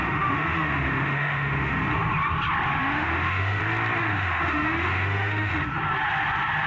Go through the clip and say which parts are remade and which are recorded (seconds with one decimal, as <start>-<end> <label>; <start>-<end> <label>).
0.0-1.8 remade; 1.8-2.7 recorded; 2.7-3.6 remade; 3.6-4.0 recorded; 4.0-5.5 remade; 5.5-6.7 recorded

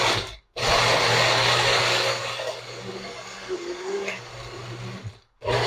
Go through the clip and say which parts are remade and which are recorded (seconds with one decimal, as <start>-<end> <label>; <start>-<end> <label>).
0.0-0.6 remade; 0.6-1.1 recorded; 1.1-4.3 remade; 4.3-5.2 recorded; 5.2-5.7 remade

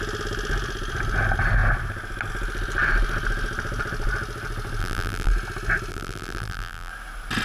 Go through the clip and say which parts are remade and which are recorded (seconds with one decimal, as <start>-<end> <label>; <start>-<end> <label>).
0.0-4.8 recorded; 4.8-5.3 remade; 5.3-5.9 recorded; 5.9-6.9 remade; 6.9-7.4 recorded

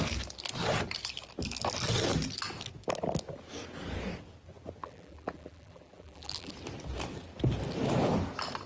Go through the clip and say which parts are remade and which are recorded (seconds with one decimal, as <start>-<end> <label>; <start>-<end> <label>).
0.0-4.8 recorded; 4.8-6.5 remade; 6.5-8.7 recorded